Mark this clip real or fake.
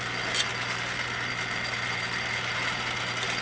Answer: real